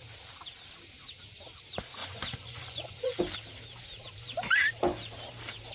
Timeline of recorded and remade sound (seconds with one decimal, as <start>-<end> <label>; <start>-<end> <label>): 0.0-2.0 recorded; 2.0-3.2 remade; 3.2-5.7 recorded